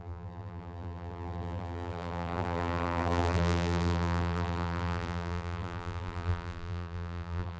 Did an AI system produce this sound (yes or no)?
yes